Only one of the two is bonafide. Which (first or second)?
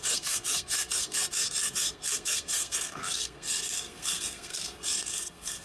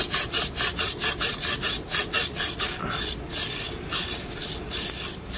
second